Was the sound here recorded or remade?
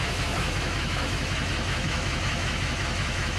remade